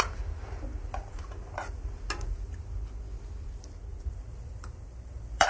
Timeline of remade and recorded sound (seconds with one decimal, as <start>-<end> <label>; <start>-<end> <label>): 0.0-3.9 recorded; 3.9-5.5 remade